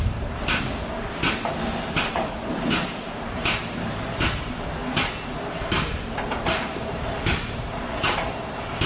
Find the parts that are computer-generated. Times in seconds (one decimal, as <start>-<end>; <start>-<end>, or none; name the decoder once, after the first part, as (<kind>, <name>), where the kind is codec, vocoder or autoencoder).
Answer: 0.0-4.8 (vocoder, BigVGAN v2); 5.5-8.9